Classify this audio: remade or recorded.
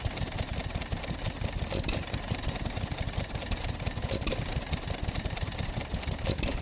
recorded